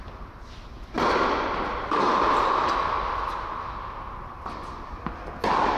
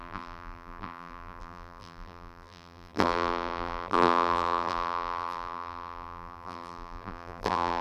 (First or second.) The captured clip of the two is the first